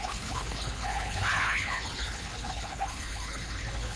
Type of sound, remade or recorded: remade